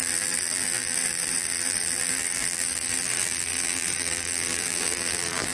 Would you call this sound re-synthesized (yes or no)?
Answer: yes